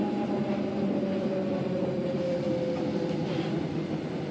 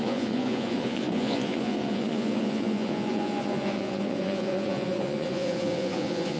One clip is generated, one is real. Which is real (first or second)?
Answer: first